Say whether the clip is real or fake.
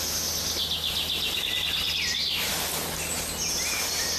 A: real